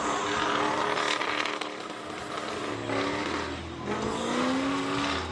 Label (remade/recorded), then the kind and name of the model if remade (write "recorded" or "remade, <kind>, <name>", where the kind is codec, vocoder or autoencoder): recorded